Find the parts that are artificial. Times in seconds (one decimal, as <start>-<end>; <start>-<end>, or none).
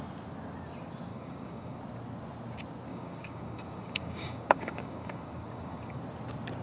1.1-1.8; 2.9-6.0